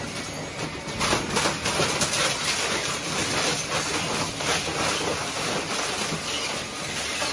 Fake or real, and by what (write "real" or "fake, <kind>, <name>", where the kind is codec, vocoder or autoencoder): real